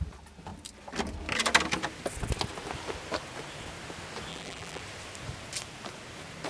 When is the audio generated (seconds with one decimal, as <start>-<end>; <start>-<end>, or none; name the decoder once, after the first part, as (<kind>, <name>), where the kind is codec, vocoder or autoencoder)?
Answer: 4.3-4.8 (vocoder, BigVGAN v2)